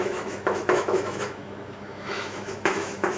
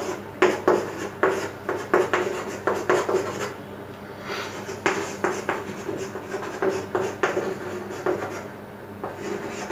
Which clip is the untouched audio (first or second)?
second